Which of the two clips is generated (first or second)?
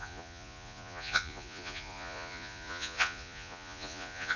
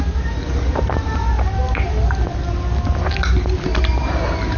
first